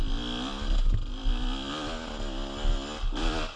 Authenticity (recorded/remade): recorded